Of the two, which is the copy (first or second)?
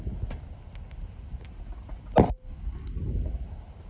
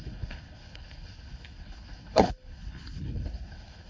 second